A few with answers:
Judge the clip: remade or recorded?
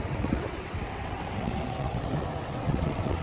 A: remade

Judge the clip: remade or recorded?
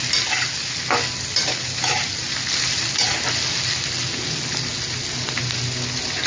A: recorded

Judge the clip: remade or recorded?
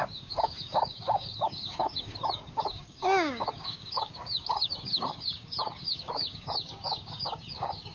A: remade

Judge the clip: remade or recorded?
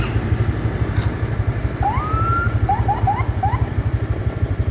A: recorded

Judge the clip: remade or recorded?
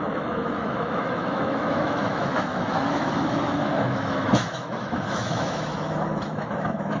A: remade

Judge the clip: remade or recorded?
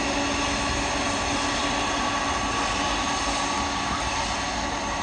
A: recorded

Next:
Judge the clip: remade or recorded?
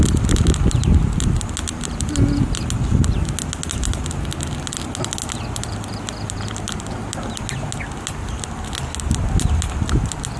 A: recorded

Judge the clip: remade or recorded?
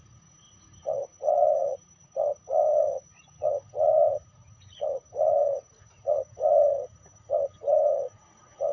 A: remade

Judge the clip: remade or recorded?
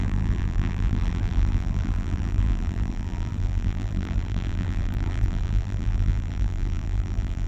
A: remade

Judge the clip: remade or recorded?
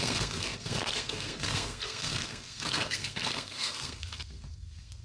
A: remade